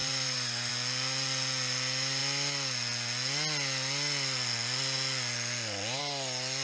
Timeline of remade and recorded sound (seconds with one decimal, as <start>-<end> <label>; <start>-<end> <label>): 0.0-0.7 remade; 0.7-6.6 recorded